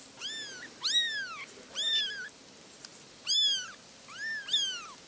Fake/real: real